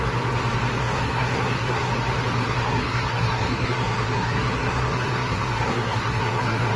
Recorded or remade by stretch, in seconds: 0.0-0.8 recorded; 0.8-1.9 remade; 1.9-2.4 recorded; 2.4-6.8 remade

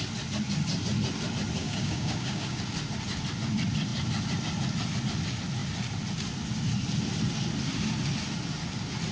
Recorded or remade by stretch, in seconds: 0.0-1.6 recorded; 1.6-2.6 remade; 2.6-9.1 recorded